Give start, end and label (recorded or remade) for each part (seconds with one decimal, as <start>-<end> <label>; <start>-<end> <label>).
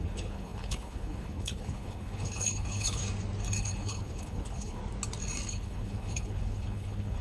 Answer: 0.0-3.0 remade; 3.0-3.6 recorded; 3.6-4.8 remade; 4.8-5.5 recorded; 5.5-7.2 remade